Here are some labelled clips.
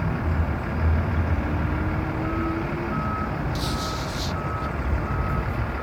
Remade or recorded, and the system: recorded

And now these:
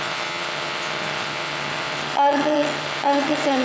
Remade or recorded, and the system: remade, vocoder, HiFi-GAN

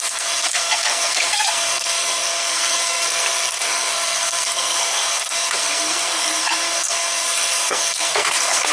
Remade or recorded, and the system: remade, codec, SNAC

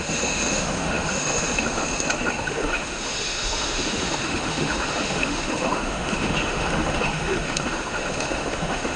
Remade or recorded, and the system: remade, autoencoder, DAC-VAE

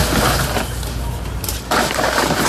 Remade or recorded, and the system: recorded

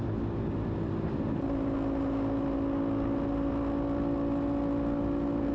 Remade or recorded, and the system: recorded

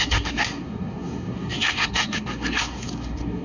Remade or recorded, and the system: remade, codec, SNAC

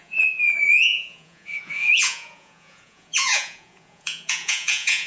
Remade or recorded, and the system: remade, vocoder, Vocos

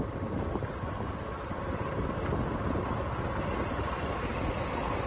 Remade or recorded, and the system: recorded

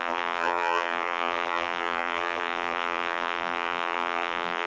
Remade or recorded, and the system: remade, vocoder, BigVGAN v2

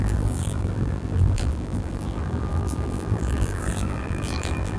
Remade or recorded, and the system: remade, vocoder, BigVGAN v2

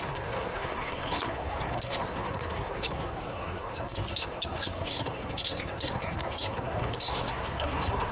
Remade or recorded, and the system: remade, codec, SNAC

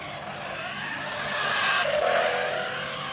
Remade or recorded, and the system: recorded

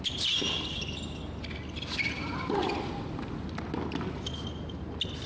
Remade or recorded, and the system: recorded